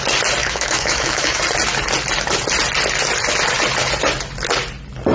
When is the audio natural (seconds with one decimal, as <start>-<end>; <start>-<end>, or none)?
0.0-0.4; 1.4-5.1